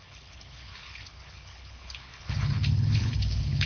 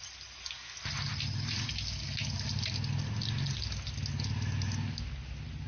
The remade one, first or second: first